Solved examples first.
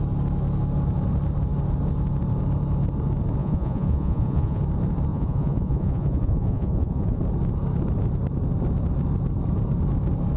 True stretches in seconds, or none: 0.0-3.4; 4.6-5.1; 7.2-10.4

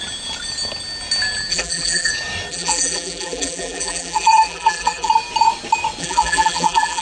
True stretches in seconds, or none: 0.0-1.5; 2.1-2.5; 5.1-6.0

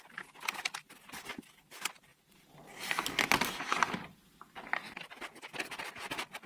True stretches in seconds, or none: 0.0-6.5

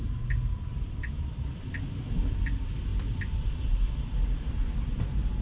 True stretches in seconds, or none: 0.0-0.7; 1.6-2.9; 4.5-5.4

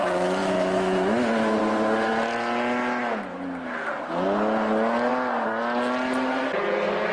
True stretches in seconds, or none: 0.0-0.4; 1.6-7.1

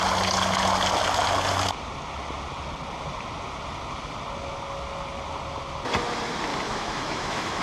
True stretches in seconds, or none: 0.0-6.5

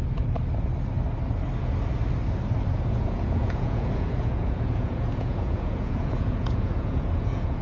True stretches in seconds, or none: 0.0-2.7